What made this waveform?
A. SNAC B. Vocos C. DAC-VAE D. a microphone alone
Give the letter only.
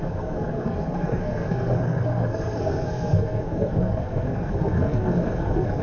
A